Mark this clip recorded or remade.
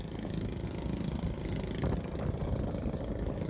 recorded